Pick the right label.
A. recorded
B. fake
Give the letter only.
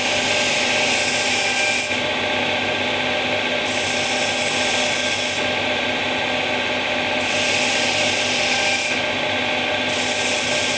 A